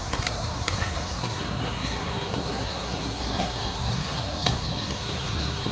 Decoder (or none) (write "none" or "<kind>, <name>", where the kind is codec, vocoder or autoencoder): codec, SNAC